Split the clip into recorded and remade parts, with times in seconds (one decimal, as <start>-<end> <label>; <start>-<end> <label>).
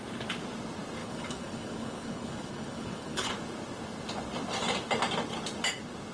0.0-1.0 recorded; 1.0-3.3 remade; 3.3-6.1 recorded